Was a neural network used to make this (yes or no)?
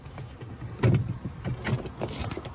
no